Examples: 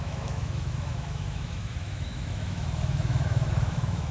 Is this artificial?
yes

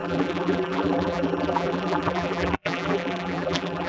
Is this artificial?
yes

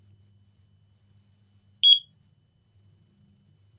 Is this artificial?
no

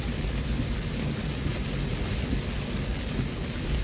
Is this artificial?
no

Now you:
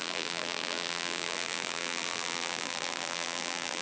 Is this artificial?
yes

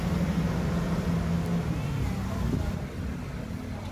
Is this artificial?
no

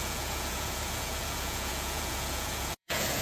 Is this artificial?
yes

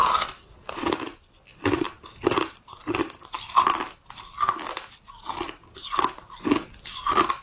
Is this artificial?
no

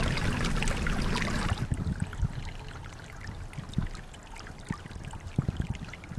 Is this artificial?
no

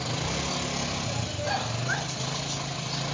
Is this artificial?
no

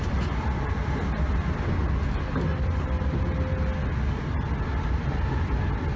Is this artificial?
no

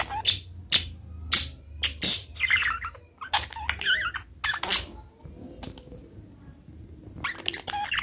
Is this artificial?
no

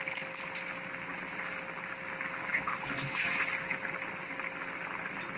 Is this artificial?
no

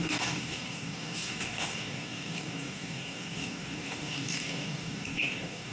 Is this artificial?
yes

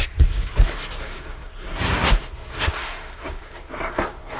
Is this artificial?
yes